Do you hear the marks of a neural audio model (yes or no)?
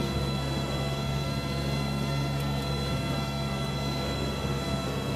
yes